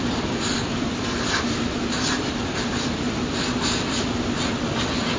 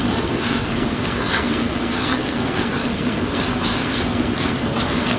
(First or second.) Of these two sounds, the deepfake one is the second